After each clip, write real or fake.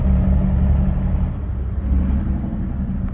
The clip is real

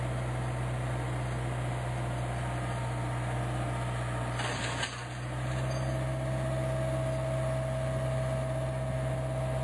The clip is real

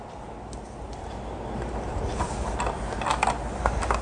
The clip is real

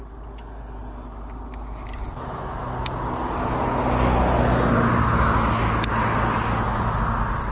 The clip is real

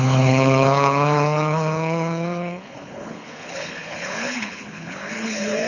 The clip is fake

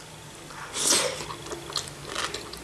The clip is real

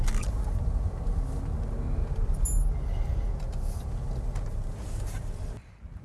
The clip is real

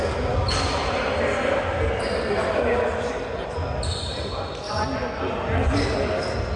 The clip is real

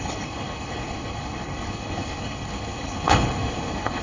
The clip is fake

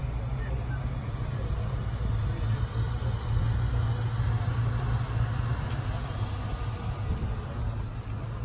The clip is real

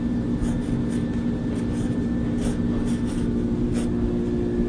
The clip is real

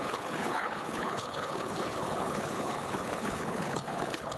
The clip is fake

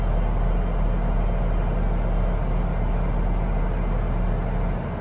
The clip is real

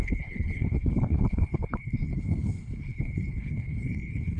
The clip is fake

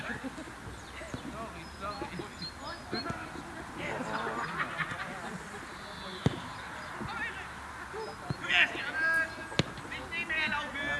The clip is real